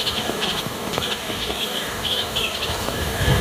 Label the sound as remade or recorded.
remade